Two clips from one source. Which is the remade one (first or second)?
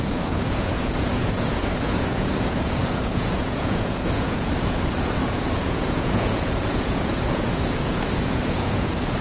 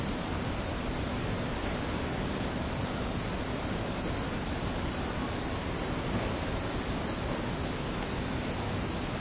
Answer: first